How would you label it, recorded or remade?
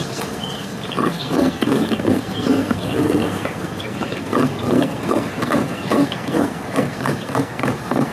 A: remade